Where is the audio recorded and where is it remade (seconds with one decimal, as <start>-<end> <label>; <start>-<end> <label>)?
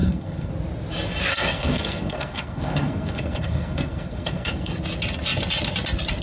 0.0-0.5 remade; 0.5-1.3 recorded; 1.3-4.7 remade; 4.7-6.2 recorded